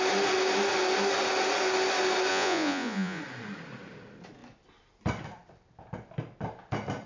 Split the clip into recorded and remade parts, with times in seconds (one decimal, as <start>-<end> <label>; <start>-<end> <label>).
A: 0.0-2.3 recorded; 2.3-3.2 remade; 3.2-7.1 recorded